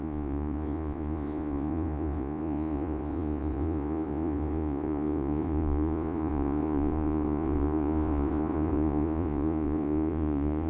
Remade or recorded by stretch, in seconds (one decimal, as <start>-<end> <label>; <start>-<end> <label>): 0.0-10.7 remade